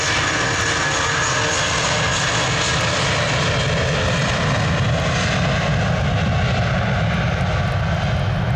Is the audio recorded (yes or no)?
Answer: yes